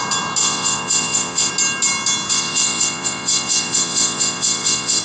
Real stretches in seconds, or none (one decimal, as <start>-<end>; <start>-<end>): 0.0-0.4; 1.5-2.3